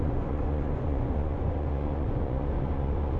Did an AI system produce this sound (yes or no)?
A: yes